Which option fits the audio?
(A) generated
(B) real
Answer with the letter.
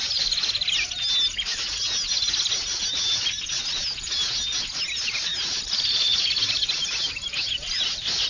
B